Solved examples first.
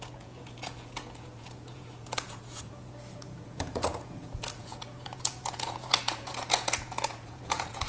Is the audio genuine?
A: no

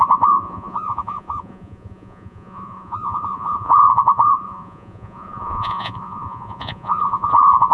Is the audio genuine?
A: no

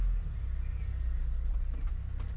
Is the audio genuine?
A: yes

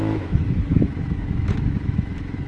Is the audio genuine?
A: no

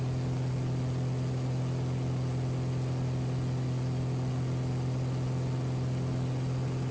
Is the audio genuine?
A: yes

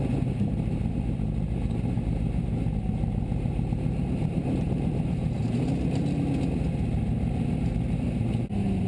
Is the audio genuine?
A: no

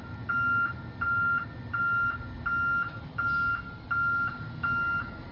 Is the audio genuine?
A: yes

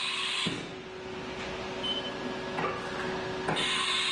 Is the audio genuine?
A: yes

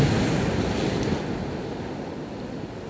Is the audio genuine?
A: yes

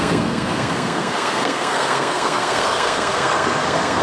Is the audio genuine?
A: no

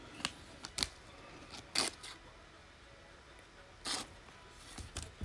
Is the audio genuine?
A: yes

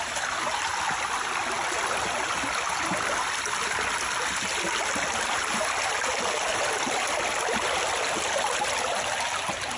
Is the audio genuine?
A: yes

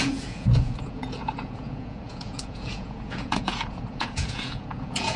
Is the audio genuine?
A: no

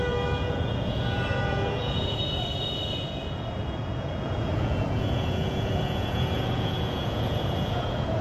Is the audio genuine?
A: no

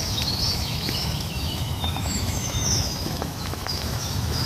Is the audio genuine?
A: no